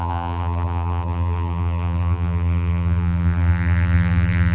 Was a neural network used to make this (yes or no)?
yes